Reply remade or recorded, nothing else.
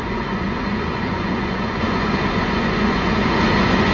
remade